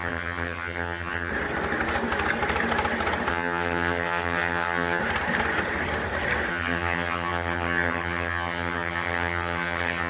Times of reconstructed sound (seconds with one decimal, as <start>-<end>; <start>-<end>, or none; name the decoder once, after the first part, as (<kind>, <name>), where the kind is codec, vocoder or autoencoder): 0.0-1.3 (vocoder, HiFi-GAN); 3.3-5.0; 6.5-10.1

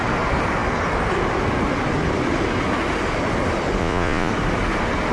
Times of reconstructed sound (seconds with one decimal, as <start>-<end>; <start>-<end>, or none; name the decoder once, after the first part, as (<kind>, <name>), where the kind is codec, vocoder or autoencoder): 3.8-4.3 (vocoder, Vocos)